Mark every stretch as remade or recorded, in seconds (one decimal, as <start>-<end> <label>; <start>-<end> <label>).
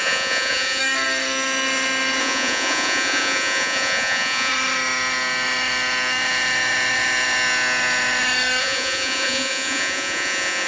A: 0.0-0.8 remade; 0.8-2.2 recorded; 2.2-4.5 remade; 4.5-8.6 recorded; 8.6-10.7 remade